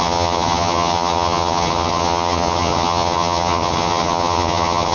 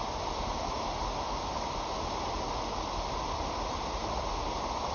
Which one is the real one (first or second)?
second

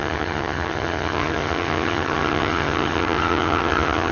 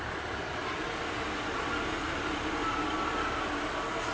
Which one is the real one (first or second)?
second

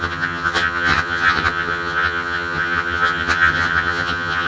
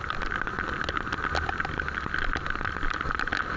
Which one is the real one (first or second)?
second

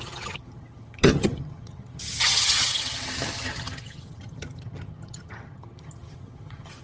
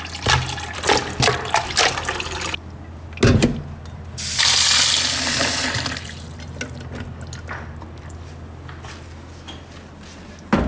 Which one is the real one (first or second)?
second